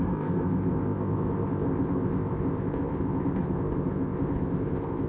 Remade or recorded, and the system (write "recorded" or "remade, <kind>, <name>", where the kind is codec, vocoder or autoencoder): remade, codec, ZipCodec